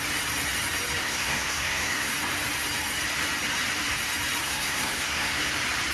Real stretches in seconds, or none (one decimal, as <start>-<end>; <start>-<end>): 0.0-1.0; 2.1-4.4; 5.5-5.9